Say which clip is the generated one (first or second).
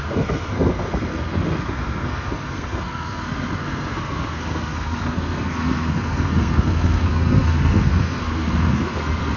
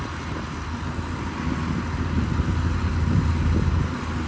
first